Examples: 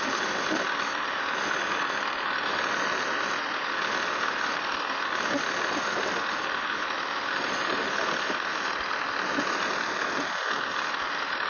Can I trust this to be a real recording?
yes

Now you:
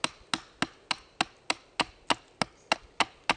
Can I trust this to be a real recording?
yes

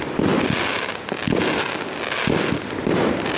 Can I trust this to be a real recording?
yes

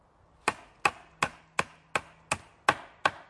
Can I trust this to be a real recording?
yes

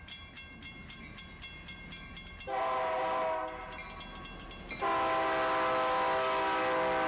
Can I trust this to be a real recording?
yes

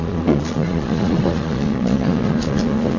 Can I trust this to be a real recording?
no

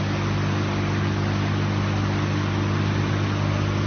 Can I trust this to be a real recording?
yes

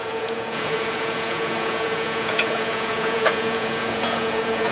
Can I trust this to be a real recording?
no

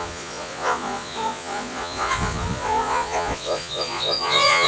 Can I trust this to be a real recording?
no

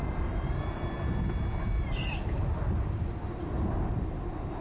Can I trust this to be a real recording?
yes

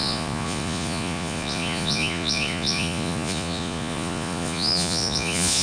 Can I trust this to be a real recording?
no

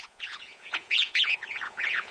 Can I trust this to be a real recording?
no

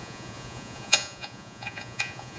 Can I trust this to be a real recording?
no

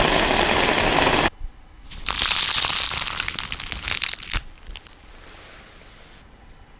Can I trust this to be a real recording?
yes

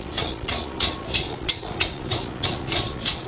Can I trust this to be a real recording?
no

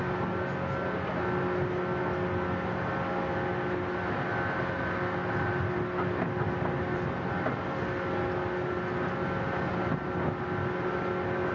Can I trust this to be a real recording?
yes